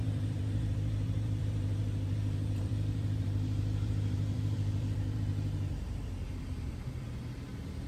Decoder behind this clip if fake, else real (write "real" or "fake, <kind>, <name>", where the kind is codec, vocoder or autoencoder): fake, vocoder, BigVGAN v2